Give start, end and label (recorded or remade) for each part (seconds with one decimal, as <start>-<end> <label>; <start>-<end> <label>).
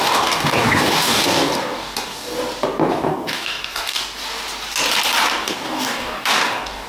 0.0-2.3 remade; 2.3-2.9 recorded; 2.9-4.0 remade; 4.0-5.4 recorded; 5.4-6.9 remade